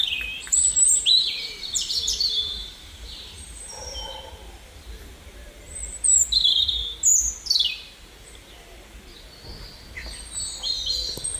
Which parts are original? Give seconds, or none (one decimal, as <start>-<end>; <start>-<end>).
0.0-0.5; 4.1-11.4